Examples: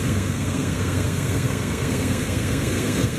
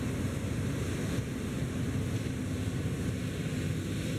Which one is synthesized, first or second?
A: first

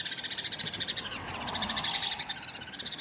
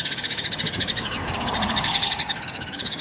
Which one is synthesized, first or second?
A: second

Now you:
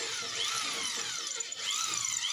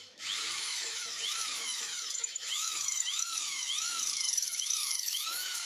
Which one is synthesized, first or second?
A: second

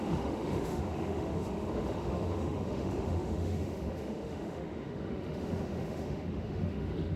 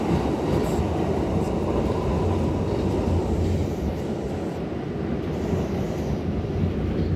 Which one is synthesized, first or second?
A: first